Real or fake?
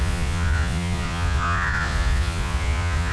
fake